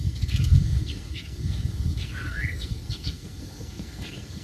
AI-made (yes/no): yes